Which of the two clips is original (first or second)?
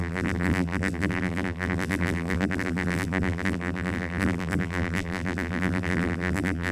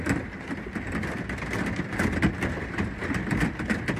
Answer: second